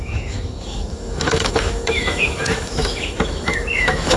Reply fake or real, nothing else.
fake